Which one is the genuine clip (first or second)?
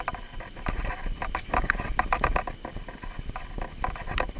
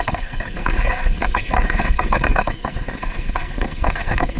first